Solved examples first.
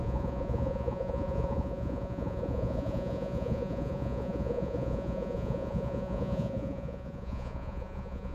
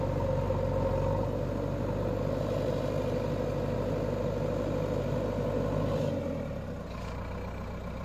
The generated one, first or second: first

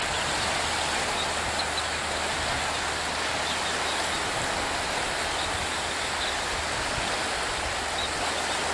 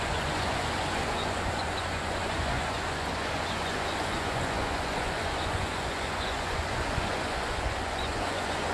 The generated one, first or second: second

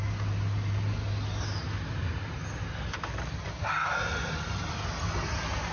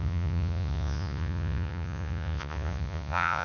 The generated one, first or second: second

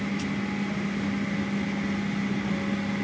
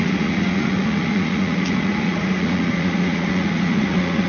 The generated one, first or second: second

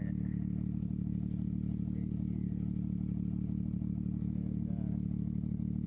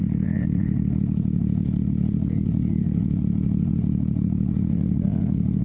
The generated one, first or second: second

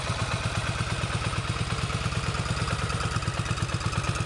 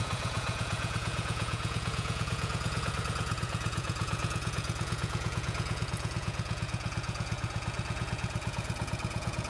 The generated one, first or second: second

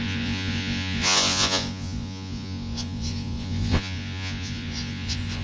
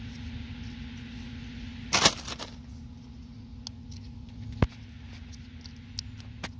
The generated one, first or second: first